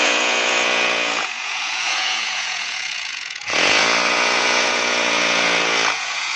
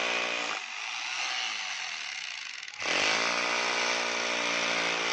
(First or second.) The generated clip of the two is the first